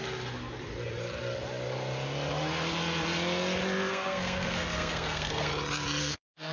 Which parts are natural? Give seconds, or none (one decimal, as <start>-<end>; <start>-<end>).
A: 0.0-3.9; 5.5-6.0